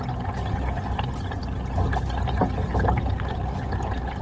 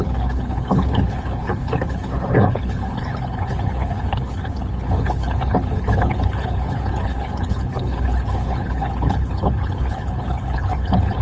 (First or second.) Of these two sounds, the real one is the first